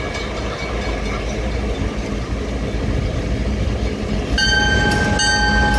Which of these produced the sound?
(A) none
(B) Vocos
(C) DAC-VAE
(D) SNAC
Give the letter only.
A